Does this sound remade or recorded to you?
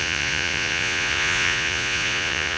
remade